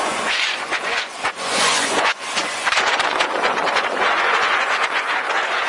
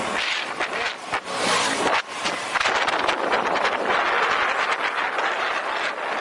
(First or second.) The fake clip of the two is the first